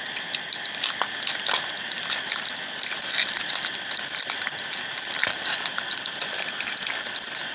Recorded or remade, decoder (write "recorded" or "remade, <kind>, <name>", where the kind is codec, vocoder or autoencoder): recorded